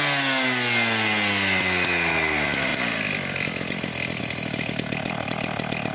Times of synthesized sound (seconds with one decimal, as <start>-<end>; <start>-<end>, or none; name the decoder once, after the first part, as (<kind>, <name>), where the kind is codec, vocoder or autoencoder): 2.7-4.2 (vocoder, BigVGAN v2)